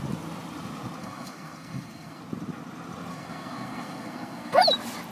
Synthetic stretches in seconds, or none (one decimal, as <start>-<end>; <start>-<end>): 1.0-2.2; 3.1-4.6